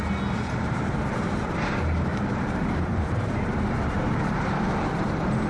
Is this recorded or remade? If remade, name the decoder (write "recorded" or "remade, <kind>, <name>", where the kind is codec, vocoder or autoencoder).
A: remade, vocoder, BigVGAN v2